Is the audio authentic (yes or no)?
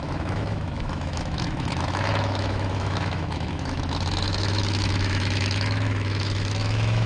no